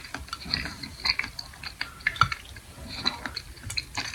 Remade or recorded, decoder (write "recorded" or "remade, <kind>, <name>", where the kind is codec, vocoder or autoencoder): recorded